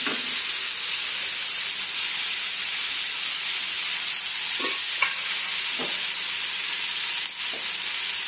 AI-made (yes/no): no